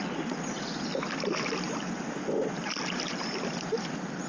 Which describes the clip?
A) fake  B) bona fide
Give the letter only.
B